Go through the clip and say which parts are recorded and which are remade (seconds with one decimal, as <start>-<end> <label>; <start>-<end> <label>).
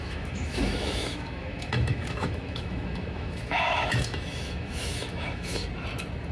0.0-5.6 remade; 5.6-6.3 recorded